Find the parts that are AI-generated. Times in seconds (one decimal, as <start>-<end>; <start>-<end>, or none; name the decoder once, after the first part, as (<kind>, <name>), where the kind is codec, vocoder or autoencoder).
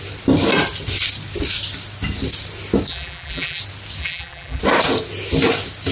2.9-3.6 (vocoder, BigVGAN v2); 4.0-4.6